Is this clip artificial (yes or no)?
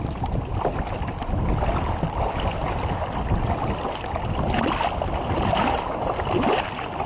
no